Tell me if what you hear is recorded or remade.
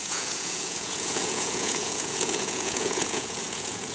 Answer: remade